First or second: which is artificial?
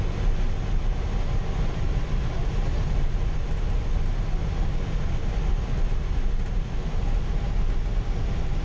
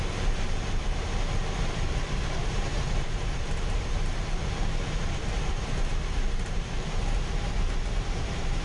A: second